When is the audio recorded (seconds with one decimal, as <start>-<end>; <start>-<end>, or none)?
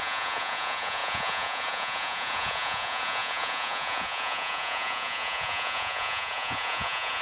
none